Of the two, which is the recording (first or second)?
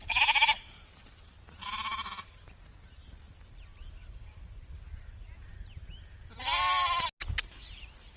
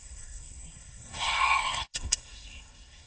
first